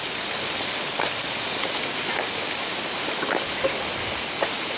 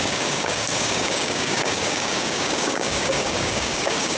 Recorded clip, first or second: first